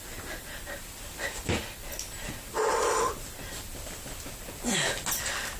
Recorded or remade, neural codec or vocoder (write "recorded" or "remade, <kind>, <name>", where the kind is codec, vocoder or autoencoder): recorded